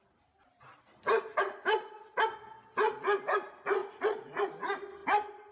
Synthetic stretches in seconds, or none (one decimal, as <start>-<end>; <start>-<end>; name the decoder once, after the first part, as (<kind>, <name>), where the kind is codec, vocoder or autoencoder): 3.8-4.4 (vocoder, Vocos)